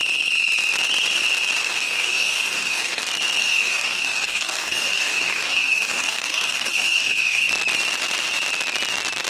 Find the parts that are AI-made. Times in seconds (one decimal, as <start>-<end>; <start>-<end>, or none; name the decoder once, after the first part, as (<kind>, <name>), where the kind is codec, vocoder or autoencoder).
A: 1.6-3.0 (codec, DAC); 3.4-7.5